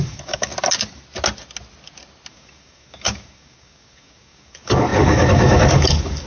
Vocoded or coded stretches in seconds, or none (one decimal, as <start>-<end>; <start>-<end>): 0.0-0.5; 2.3-6.3